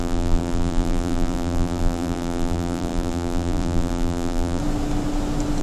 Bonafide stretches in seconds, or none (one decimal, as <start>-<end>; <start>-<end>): 4.6-5.6